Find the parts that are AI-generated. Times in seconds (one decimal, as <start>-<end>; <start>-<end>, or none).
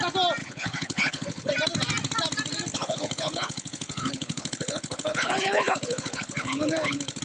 0.4-1.5; 2.7-7.2